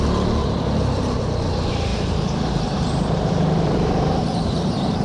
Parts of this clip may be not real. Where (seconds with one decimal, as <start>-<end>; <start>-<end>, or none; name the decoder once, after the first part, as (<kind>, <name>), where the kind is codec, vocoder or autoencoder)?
1.9-5.0 (vocoder, BigVGAN v2)